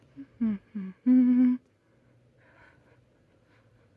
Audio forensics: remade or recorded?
recorded